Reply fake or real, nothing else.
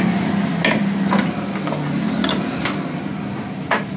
real